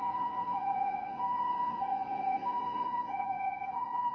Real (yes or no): no